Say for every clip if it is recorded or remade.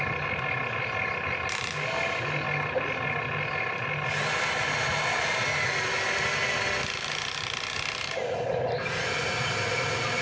recorded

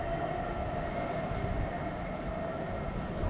recorded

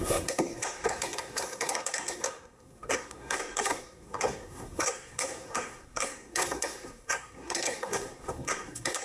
remade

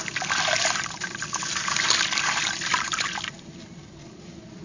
remade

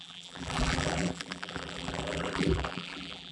remade